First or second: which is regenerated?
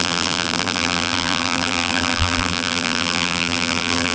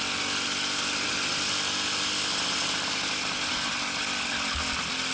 first